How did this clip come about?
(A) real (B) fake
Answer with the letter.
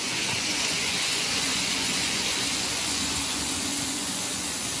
B